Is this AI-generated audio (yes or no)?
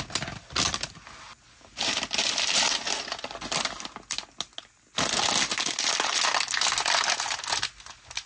no